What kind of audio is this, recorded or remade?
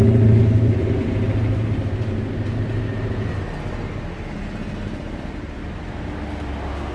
recorded